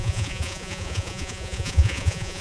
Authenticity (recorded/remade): remade